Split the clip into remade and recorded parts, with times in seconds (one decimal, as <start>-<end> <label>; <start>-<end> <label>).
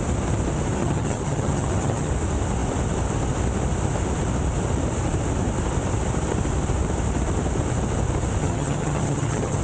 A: 0.0-0.8 recorded; 0.8-2.1 remade; 2.1-8.4 recorded; 8.4-9.6 remade